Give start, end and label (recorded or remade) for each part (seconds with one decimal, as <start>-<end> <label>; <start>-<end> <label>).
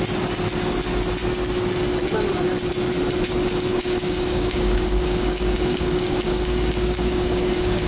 0.0-3.7 recorded; 3.7-7.9 remade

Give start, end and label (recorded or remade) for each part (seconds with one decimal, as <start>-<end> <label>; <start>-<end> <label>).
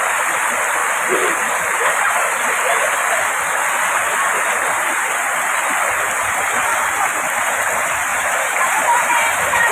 0.0-8.1 recorded; 8.1-9.7 remade